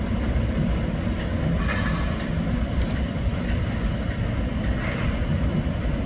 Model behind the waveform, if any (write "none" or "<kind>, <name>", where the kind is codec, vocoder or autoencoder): none